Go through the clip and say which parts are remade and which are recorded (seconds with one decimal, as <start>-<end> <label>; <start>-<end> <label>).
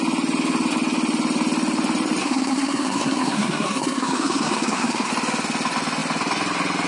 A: 0.0-2.2 recorded; 2.2-5.1 remade; 5.1-6.9 recorded